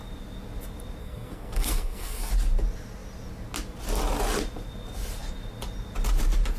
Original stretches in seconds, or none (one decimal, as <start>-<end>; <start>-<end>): 0.0-1.0; 2.3-6.6